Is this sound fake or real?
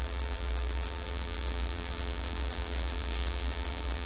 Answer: fake